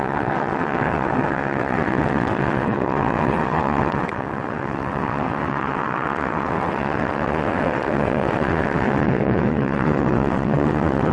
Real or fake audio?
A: fake